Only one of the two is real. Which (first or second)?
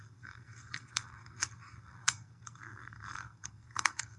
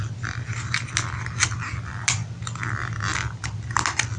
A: second